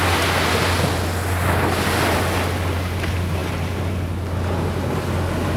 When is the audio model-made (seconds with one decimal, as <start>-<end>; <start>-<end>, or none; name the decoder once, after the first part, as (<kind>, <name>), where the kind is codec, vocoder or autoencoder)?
none